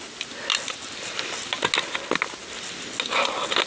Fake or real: real